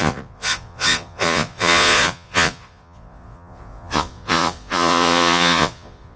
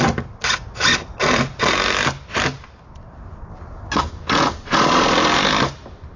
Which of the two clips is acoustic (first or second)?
second